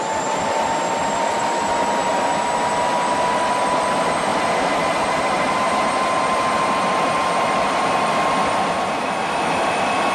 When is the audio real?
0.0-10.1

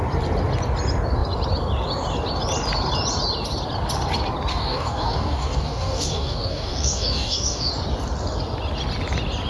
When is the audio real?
0.0-4.5; 7.7-9.5